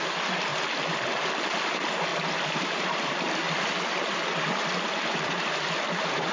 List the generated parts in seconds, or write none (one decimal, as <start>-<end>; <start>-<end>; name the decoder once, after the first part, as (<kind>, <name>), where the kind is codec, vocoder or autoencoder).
2.1-6.3 (vocoder, BigVGAN v2)